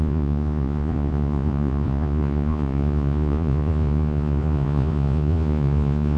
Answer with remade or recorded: remade